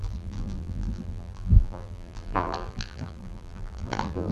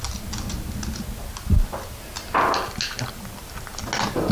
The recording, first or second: second